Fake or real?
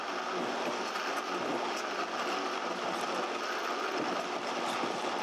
real